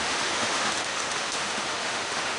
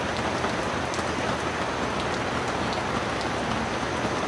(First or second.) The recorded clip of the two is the second